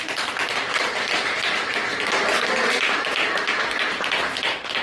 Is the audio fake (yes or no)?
no